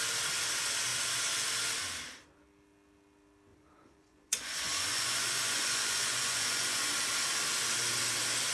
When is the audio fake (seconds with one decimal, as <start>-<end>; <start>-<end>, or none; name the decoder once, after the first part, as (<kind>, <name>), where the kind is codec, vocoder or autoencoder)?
3.5-6.9 (vocoder, Vocos)